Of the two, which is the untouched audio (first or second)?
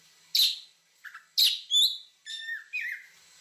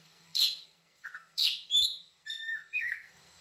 first